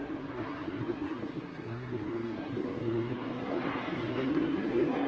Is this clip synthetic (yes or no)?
yes